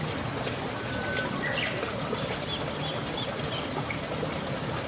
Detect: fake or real real